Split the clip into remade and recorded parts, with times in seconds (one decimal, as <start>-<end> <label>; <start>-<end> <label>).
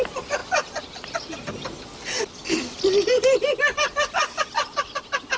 0.0-5.4 recorded